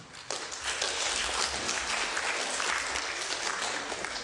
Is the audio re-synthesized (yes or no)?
no